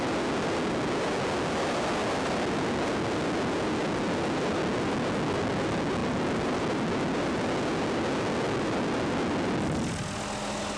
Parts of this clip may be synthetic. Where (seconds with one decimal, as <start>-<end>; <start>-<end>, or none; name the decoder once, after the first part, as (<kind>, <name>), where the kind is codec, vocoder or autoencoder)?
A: none